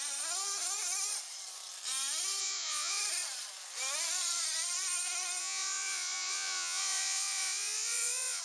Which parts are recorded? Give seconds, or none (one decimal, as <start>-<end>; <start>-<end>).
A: 0.0-2.4; 3.0-5.4